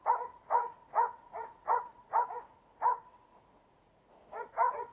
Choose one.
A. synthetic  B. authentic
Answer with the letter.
A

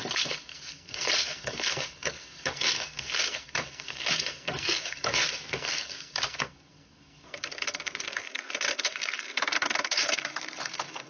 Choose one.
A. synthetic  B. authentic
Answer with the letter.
A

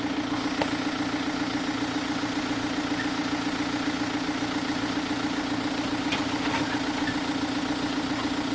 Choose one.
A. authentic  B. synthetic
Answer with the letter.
A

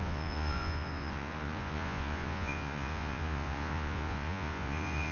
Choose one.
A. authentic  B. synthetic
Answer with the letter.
B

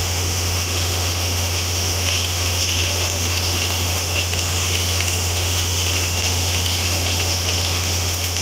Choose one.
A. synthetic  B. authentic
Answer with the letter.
A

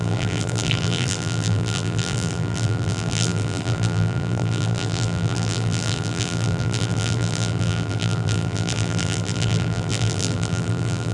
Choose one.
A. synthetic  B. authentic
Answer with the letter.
A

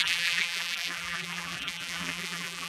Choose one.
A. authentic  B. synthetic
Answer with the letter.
B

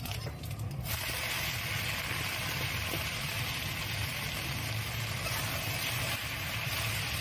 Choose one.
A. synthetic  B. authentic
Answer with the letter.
B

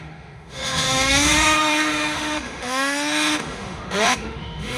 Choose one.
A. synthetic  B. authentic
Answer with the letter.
A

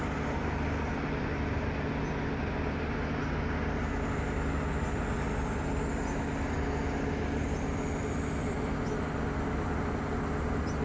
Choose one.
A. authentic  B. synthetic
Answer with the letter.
A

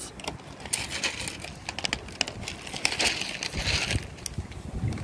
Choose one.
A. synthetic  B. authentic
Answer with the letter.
B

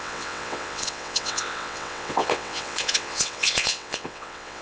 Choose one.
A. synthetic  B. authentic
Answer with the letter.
A